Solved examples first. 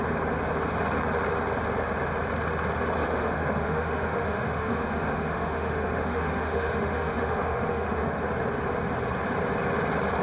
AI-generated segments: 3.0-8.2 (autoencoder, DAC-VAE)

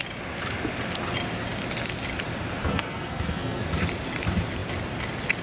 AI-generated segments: 2.6-3.6 (codec, SNAC)

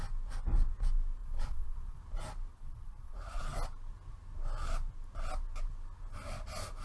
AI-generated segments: 1.2-2.0 (vocoder, Vocos); 2.5-3.4

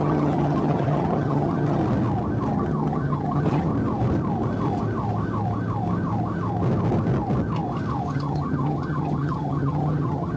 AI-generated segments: 0.0-1.8 (vocoder, HiFi-GAN); 2.5-3.7; 8.1-10.4